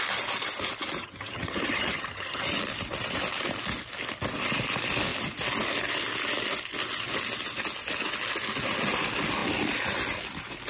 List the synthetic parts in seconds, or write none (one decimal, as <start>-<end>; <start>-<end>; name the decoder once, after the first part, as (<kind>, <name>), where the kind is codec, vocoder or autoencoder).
1.0-2.4 (vocoder, HiFi-GAN)